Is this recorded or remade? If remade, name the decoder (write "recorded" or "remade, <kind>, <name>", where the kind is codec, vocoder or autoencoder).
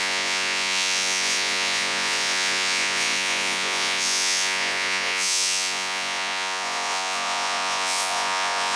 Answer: remade, vocoder, Vocos